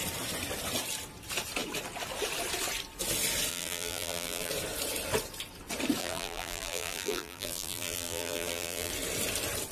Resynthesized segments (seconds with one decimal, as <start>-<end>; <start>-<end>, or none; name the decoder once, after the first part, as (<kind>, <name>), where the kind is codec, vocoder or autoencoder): 3.5-4.5 (vocoder, BigVGAN v2); 6.0-8.9